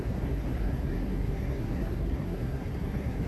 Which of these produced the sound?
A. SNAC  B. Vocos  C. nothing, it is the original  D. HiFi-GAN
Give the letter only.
A